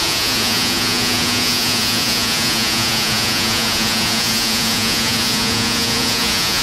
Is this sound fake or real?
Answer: fake